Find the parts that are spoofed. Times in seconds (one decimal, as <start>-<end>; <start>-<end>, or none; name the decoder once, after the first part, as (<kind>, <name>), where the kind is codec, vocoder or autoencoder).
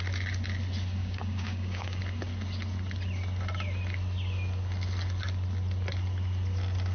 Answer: 1.0-2.0 (codec, DAC)